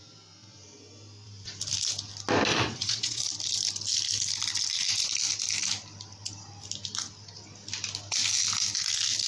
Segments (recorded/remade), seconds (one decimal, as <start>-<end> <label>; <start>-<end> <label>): 0.0-2.5 recorded; 2.5-3.2 remade; 3.2-9.3 recorded